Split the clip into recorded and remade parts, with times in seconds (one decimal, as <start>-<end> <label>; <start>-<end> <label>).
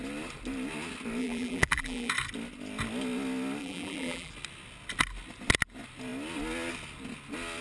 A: 0.0-1.2 recorded; 1.2-2.1 remade; 2.1-3.6 recorded; 3.6-4.3 remade; 4.3-7.6 recorded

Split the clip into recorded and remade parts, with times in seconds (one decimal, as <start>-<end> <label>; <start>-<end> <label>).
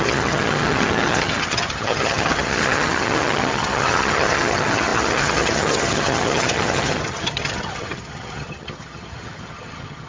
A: 0.0-10.1 remade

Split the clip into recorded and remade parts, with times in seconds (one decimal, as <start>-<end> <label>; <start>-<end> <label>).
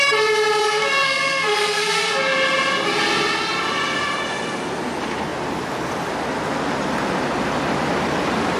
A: 0.0-0.6 recorded; 0.6-2.1 remade; 2.1-8.6 recorded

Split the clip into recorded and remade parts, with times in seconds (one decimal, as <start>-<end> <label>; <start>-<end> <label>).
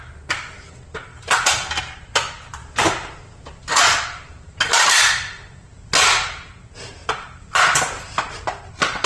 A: 0.0-1.1 recorded; 1.1-1.8 remade; 1.8-2.6 recorded; 2.6-5.9 remade; 5.9-7.0 recorded; 7.0-8.6 remade; 8.6-9.1 recorded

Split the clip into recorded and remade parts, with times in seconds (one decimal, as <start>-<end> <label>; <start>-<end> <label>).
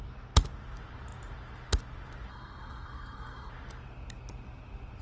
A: 0.0-2.3 recorded; 2.3-3.5 remade; 3.5-5.0 recorded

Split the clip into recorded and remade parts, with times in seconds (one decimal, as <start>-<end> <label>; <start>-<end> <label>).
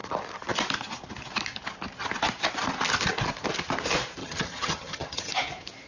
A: 0.0-4.2 recorded; 4.2-5.3 remade; 5.3-5.9 recorded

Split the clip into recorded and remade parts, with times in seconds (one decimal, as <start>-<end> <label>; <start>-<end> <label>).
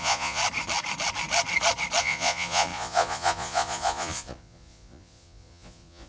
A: 0.0-0.4 remade; 0.4-2.0 recorded; 2.0-6.1 remade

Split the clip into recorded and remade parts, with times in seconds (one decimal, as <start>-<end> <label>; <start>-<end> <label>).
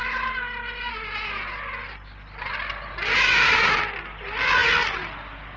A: 0.0-5.6 recorded